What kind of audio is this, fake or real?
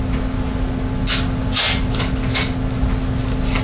real